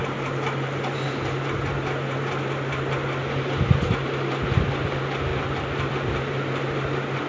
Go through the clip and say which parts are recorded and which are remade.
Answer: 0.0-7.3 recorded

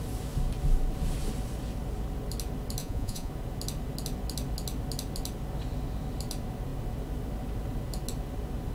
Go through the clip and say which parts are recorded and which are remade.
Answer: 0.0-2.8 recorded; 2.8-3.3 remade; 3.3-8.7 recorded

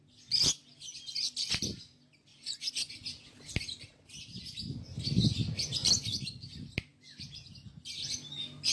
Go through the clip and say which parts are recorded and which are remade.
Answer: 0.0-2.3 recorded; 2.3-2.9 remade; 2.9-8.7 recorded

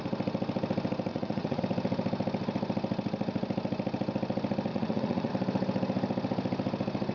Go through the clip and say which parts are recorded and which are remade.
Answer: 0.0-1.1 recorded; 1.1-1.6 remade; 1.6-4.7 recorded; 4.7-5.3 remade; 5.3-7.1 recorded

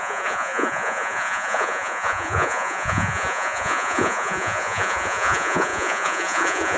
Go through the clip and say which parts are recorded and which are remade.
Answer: 0.0-6.8 remade

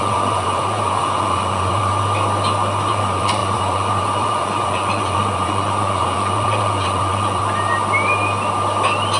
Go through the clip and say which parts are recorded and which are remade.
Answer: 0.0-1.9 remade; 1.9-2.9 recorded; 2.9-7.4 remade; 7.4-9.2 recorded

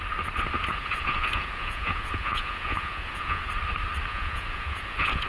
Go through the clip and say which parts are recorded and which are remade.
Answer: 0.0-0.7 recorded; 0.7-3.4 remade; 3.4-4.1 recorded; 4.1-5.3 remade

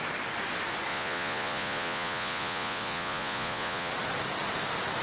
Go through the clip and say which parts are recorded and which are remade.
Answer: 0.0-0.9 recorded; 0.9-3.9 remade; 3.9-5.0 recorded